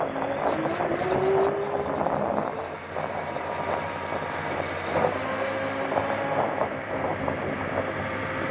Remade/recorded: recorded